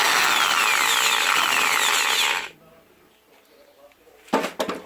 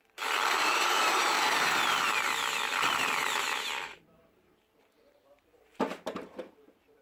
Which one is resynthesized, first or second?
second